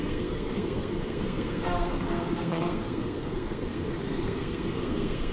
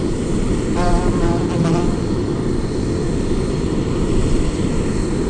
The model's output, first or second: first